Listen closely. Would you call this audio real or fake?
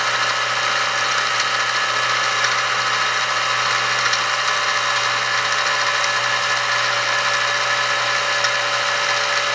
real